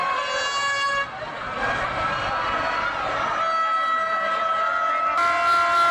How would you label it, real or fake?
real